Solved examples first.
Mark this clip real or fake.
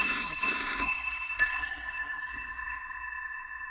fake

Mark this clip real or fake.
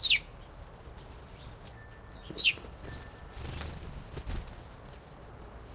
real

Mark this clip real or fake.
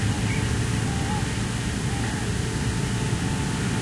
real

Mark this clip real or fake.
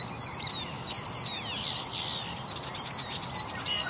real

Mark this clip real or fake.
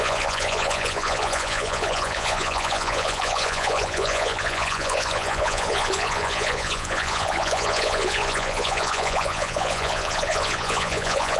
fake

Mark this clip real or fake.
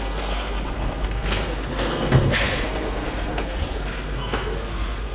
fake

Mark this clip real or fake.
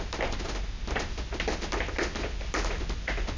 real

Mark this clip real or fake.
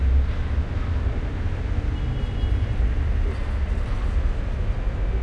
real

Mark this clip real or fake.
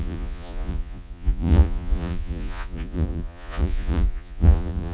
fake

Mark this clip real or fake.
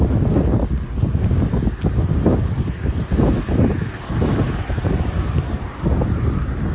real